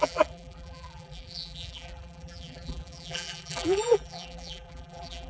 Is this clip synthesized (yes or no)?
yes